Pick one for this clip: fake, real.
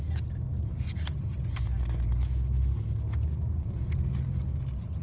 real